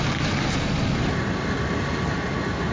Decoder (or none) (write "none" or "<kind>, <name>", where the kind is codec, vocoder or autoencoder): none